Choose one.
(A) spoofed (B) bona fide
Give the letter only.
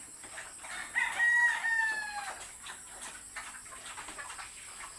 B